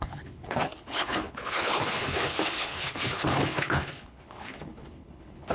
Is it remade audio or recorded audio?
remade